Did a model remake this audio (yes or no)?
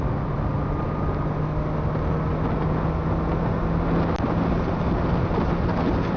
no